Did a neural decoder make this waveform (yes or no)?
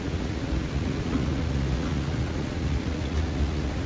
yes